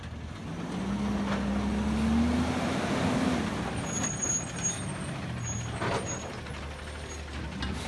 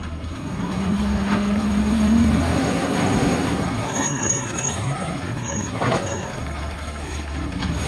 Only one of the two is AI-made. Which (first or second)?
second